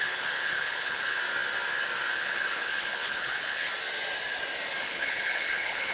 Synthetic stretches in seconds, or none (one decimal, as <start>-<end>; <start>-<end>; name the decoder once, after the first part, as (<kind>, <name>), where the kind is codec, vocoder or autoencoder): 0.0-1.2 (codec, HILCodec); 2.1-3.7; 4.8-5.9